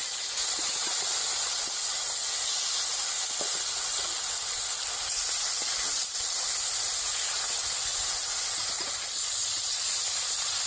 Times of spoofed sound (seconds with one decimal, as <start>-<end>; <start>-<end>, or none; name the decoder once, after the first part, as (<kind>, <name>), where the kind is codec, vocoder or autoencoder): 0.0-1.1 (vocoder, BigVGAN v2); 7.9-8.7